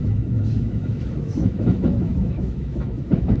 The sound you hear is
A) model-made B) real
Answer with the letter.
A